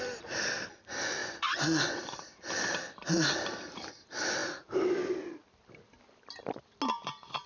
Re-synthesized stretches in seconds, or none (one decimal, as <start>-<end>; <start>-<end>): 1.2-1.9